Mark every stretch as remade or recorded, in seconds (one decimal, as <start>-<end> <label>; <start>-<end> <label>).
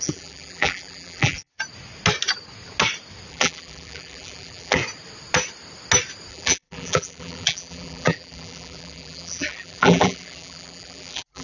0.0-1.5 remade; 1.5-3.3 recorded; 3.3-4.8 remade; 4.8-6.3 recorded; 6.3-11.4 remade